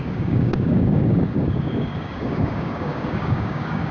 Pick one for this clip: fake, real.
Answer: fake